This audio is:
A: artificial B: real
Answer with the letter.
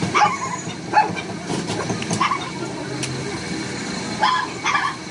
B